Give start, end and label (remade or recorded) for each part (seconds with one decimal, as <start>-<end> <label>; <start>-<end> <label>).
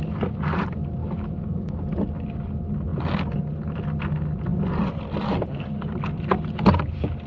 0.0-1.0 recorded; 1.0-1.8 remade; 1.8-7.3 recorded